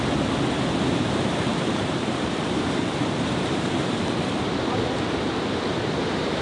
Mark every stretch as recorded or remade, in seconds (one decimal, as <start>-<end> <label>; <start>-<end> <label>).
0.0-1.5 recorded; 1.5-5.0 remade; 5.0-6.4 recorded